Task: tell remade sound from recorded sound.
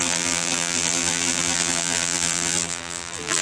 remade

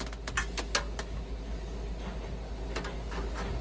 recorded